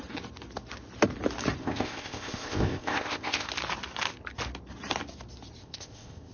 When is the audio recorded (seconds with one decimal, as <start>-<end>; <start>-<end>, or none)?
0.0-1.6; 3.5-5.6